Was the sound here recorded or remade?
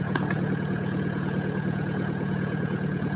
remade